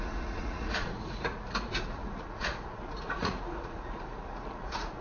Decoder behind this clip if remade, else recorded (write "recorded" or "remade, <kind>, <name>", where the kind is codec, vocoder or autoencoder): remade, vocoder, Vocos